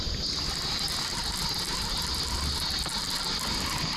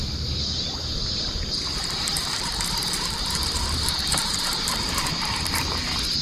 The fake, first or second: second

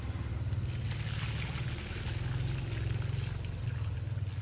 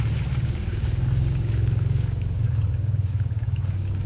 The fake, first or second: second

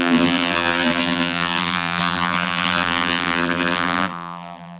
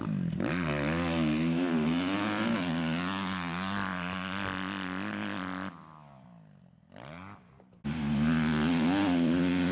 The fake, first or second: first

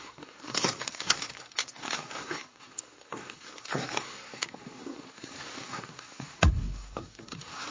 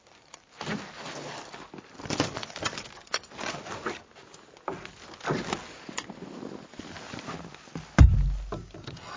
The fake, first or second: first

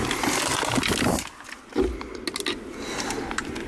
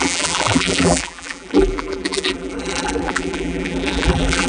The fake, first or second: second